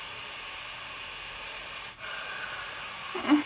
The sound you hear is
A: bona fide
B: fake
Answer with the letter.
A